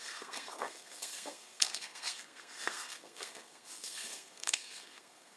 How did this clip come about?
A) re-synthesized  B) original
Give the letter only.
A